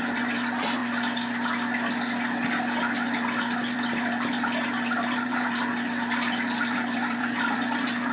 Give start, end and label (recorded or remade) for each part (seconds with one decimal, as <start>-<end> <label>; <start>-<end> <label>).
0.0-0.8 remade; 0.8-3.7 recorded; 3.7-5.7 remade; 5.7-6.6 recorded; 6.6-8.1 remade